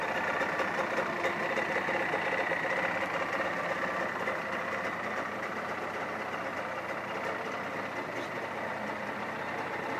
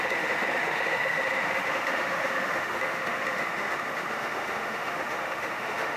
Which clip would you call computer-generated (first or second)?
second